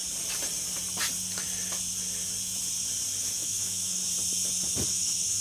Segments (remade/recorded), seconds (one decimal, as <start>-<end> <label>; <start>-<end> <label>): 0.0-3.2 recorded; 3.2-4.0 remade; 4.0-4.9 recorded; 4.9-5.4 remade